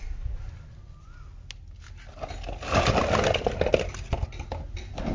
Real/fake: real